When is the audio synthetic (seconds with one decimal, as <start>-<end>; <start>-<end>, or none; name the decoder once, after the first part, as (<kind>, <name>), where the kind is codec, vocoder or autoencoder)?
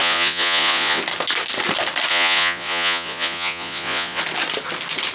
0.0-1.0 (vocoder, Vocos); 2.1-4.2